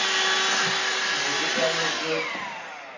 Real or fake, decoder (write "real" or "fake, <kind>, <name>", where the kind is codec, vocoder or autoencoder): real